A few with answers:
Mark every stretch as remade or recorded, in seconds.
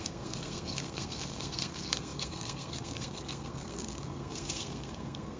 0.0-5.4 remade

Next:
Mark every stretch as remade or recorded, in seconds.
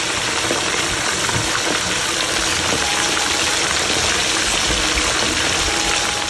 0.0-6.3 recorded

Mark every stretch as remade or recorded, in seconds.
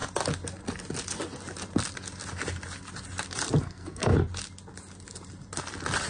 0.0-3.6 recorded; 3.6-4.1 remade; 4.1-6.1 recorded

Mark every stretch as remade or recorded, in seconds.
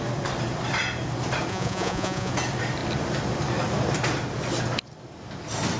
0.0-1.5 recorded; 1.5-2.3 remade; 2.3-5.8 recorded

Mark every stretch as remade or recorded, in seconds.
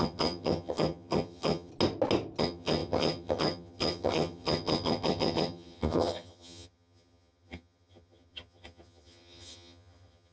0.0-1.7 remade; 1.7-2.4 recorded; 2.4-10.3 remade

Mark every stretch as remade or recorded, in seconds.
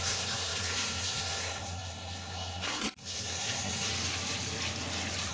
0.0-3.9 remade; 3.9-5.3 recorded